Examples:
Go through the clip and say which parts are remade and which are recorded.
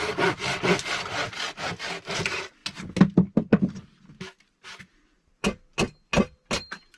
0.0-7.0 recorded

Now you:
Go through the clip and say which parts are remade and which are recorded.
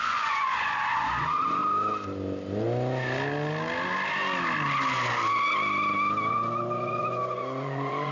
0.0-1.6 remade; 1.6-6.3 recorded; 6.3-8.1 remade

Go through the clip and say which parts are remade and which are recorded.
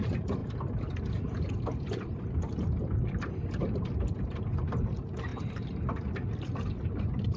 0.0-0.4 recorded; 0.4-4.2 remade; 4.2-5.3 recorded; 5.3-7.4 remade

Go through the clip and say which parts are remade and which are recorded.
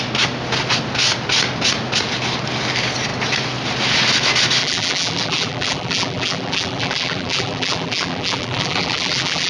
0.0-4.6 recorded; 4.6-9.5 remade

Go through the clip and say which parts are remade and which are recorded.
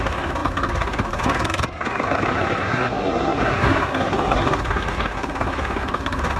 0.0-6.4 remade